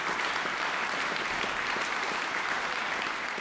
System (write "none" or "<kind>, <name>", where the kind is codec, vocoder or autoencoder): none